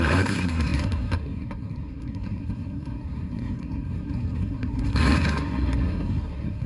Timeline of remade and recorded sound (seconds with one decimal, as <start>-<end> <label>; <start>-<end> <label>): 0.0-6.7 remade